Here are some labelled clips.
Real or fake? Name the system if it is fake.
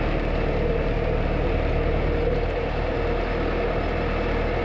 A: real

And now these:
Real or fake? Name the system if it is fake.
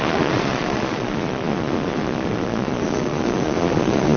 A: fake, vocoder, Vocos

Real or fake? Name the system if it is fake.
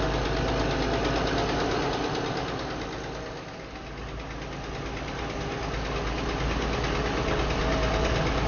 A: real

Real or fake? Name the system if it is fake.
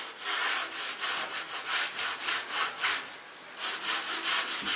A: real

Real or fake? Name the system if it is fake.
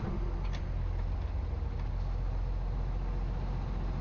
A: real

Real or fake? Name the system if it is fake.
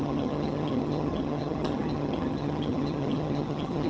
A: fake, vocoder, HiFi-GAN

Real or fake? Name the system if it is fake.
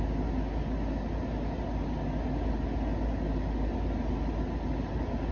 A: real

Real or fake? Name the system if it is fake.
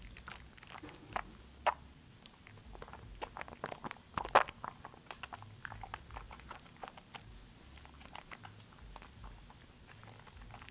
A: real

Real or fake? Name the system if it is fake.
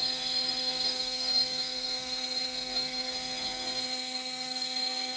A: fake, codec, SNAC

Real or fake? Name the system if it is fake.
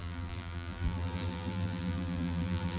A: fake, vocoder, BigVGAN v2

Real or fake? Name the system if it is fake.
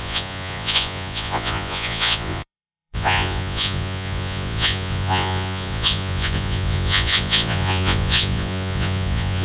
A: fake, vocoder, Vocos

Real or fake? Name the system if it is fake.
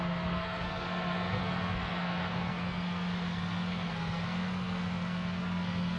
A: fake, codec, SNAC